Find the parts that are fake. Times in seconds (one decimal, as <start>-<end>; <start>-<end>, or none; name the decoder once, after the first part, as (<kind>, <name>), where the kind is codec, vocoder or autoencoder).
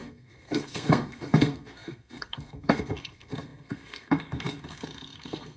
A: 0.0-5.6 (codec, SNAC)